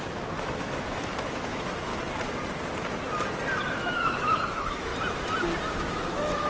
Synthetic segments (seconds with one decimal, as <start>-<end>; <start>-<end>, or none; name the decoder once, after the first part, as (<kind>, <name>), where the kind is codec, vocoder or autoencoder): 0.0-1.9 (autoencoder, DAC-VAE); 3.7-4.9; 5.7-6.5